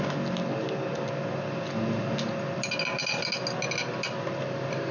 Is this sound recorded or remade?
recorded